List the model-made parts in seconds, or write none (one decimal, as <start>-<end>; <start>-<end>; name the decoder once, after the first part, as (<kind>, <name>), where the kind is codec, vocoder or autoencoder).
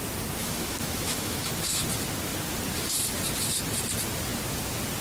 0.4-1.5 (autoencoder, DAC-VAE)